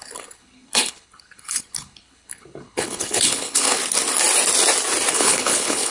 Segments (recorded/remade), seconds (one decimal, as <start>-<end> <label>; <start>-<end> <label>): 0.0-3.8 remade; 3.8-5.1 recorded; 5.1-5.9 remade